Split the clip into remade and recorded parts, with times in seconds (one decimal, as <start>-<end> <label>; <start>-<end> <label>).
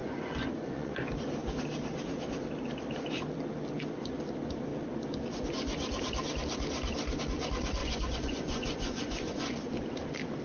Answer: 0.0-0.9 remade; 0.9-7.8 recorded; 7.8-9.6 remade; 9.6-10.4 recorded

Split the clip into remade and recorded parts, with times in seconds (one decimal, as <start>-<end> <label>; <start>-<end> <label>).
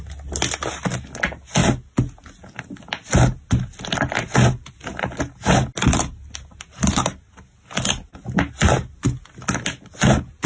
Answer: 0.0-10.5 recorded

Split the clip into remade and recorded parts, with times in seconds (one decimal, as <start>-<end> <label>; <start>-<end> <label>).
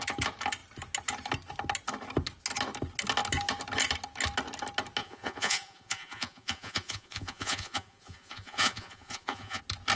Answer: 0.0-5.0 recorded; 5.0-9.6 remade; 9.6-10.0 recorded